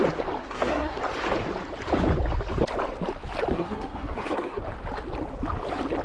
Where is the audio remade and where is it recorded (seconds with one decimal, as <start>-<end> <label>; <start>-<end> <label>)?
0.0-0.4 recorded; 0.4-1.0 remade; 1.0-3.5 recorded; 3.5-4.6 remade; 4.6-6.0 recorded